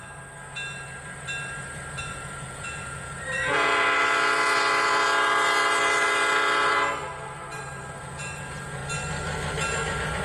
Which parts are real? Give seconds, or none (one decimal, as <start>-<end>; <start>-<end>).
0.0-2.0; 3.7-8.0; 8.8-10.2